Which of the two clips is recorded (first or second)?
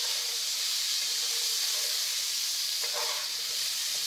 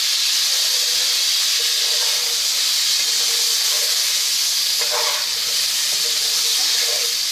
second